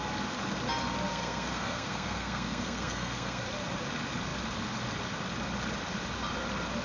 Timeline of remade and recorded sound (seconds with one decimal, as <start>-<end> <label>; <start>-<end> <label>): 0.0-1.1 recorded; 1.1-3.4 remade; 3.4-6.8 recorded